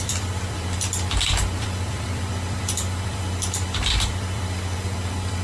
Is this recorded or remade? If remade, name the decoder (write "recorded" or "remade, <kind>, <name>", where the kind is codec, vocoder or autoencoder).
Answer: remade, vocoder, BigVGAN v2